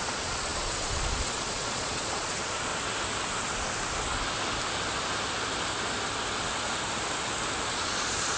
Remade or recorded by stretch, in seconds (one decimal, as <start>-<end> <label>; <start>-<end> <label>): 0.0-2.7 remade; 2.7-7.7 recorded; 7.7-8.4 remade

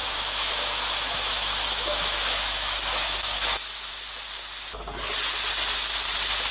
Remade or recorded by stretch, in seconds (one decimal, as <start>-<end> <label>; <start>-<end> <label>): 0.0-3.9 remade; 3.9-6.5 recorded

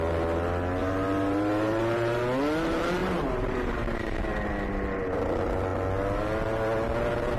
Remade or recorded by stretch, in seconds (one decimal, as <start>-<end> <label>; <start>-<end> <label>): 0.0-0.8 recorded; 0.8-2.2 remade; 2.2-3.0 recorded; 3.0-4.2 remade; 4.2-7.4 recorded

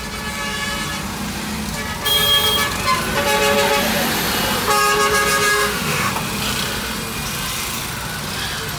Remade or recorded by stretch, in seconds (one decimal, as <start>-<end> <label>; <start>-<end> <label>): 0.0-5.5 recorded; 5.5-6.1 remade; 6.1-8.8 recorded

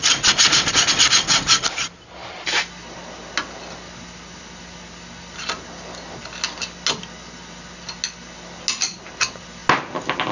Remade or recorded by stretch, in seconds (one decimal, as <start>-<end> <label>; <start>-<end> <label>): 0.0-10.3 recorded

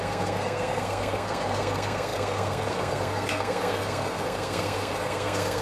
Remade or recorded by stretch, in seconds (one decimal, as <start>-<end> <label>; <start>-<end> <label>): 0.0-5.6 remade